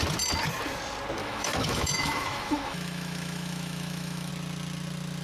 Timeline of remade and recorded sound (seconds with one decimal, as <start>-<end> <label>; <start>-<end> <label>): 0.0-1.2 recorded; 1.2-4.3 remade; 4.3-5.2 recorded